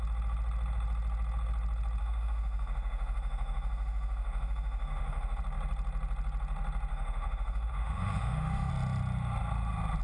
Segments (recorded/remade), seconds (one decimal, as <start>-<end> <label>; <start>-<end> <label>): 0.0-2.0 recorded; 2.0-5.4 remade; 5.4-6.9 recorded; 6.9-8.7 remade; 8.7-10.0 recorded